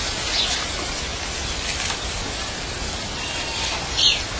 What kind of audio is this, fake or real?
real